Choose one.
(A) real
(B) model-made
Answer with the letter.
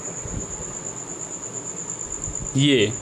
A